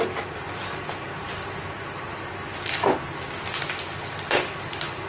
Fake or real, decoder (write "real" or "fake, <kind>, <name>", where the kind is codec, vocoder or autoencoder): real